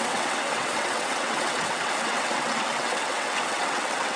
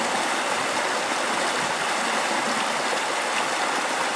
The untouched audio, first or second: second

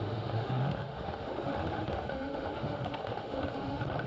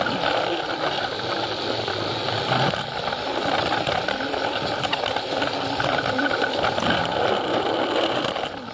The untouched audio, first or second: second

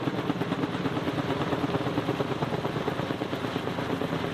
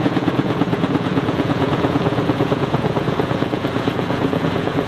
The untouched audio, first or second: first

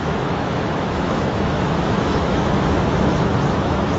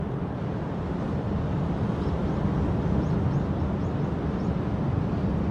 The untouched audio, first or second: second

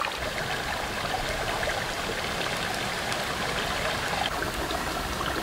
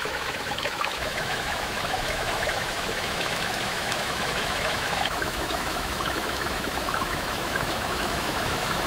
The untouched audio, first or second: first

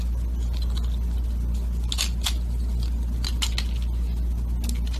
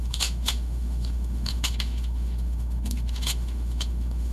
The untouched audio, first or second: first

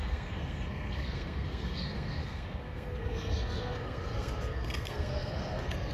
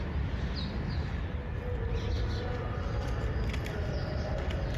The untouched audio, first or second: second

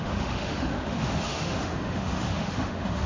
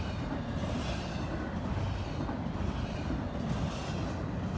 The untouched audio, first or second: second